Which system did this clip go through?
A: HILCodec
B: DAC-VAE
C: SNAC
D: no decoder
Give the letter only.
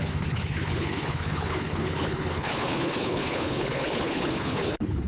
A